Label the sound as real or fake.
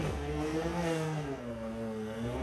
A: fake